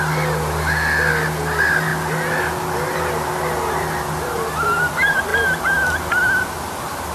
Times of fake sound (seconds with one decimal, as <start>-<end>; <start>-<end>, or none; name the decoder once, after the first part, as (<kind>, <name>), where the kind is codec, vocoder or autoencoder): none